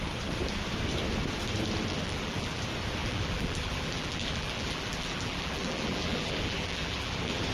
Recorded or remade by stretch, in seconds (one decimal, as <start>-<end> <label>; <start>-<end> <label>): 0.0-1.9 recorded; 1.9-2.6 remade; 2.6-3.0 recorded; 3.0-7.5 remade